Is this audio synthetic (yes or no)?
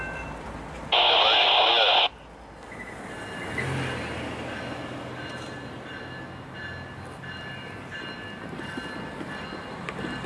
no